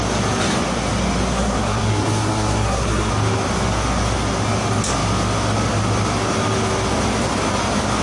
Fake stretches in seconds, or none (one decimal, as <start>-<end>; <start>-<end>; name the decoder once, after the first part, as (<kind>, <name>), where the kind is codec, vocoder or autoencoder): 1.3-3.1 (codec, SNAC)